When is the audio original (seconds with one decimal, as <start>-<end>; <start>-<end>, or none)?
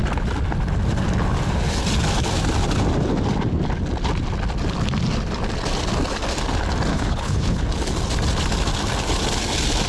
0.0-6.9; 7.6-9.9